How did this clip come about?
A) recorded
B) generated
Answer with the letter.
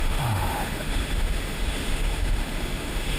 B